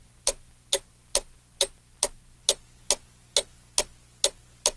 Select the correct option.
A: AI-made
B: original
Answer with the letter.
B